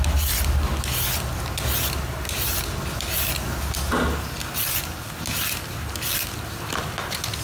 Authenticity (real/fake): real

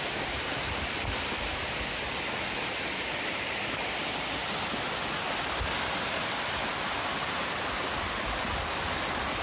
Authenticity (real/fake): real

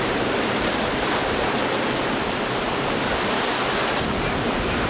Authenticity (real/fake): fake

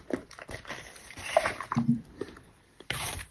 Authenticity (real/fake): fake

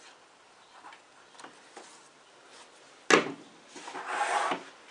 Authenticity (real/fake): real